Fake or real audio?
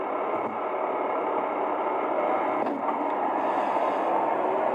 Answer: real